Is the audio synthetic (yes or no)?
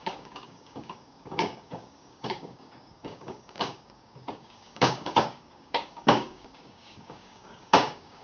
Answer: yes